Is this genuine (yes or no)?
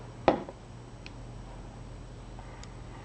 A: yes